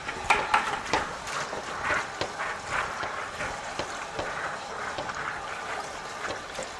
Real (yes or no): yes